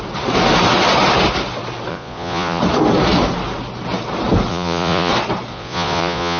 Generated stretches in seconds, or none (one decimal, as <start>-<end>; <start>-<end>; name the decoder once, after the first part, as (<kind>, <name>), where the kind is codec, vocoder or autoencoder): 1.9-2.6 (vocoder, Vocos); 4.5-5.1; 5.5-6.4